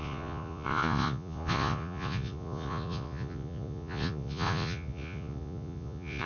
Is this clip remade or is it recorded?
remade